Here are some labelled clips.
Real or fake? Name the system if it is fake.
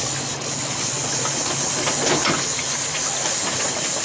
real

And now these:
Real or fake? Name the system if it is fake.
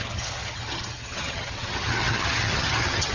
fake, vocoder, HiFi-GAN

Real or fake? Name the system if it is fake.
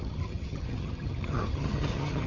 fake, vocoder, HiFi-GAN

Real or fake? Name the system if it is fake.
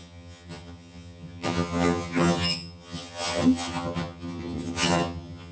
fake, vocoder, HiFi-GAN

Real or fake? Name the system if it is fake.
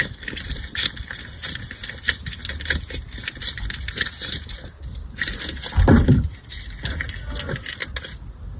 real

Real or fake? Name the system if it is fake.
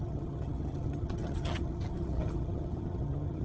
fake, vocoder, HiFi-GAN